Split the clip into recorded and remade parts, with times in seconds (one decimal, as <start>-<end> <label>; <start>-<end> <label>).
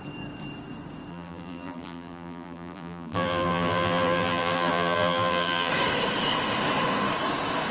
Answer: 0.0-1.1 recorded; 1.1-5.7 remade; 5.7-7.7 recorded